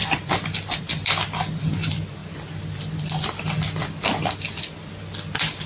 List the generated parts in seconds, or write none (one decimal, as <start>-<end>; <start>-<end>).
none